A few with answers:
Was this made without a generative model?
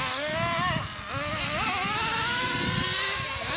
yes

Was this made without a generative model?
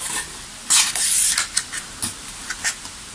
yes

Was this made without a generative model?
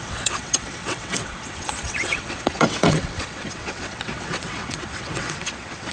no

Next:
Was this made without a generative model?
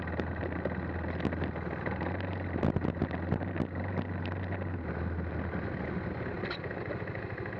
yes